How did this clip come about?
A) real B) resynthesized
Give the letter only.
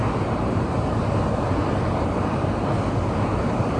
B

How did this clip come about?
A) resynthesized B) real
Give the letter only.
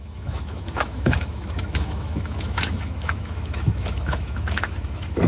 A